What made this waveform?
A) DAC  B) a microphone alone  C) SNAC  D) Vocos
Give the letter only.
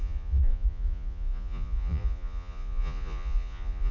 D